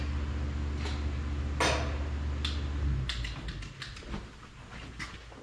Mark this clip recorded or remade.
recorded